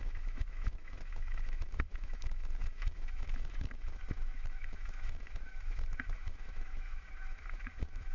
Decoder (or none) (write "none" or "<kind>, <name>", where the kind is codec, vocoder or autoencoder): autoencoder, DAC-VAE